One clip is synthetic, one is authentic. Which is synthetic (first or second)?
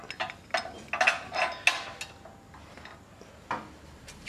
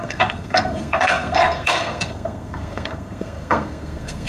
second